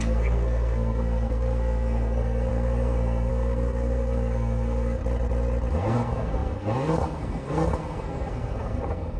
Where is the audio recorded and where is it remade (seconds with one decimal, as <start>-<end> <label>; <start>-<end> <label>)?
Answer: 0.0-5.0 remade; 5.0-5.7 recorded; 5.7-9.2 remade